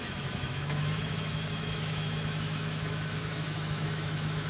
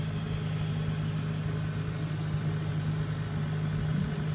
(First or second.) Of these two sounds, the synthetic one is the first